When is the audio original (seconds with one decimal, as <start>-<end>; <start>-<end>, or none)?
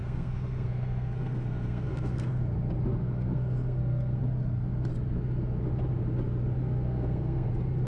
2.4-3.0; 4.2-6.6; 7.5-7.9